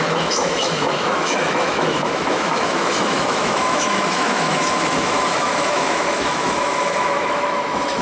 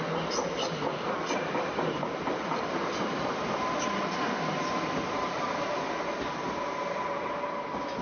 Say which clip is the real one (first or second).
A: second